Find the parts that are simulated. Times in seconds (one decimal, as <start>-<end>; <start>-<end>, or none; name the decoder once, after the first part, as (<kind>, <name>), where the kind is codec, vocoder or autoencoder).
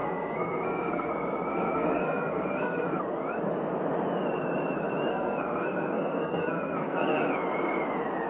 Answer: 0.0-1.1 (codec, SNAC); 1.5-3.0; 5.1-7.3